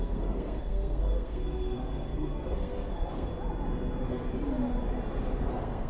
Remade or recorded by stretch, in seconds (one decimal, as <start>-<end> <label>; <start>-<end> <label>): 0.0-3.3 remade; 3.3-5.5 recorded; 5.5-5.9 remade